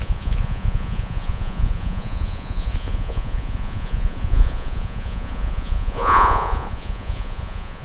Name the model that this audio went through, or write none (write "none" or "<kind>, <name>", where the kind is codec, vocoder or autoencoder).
vocoder, Vocos